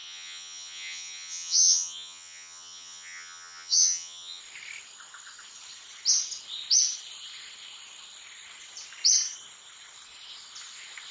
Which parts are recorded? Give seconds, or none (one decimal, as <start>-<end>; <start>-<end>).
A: 4.4-11.1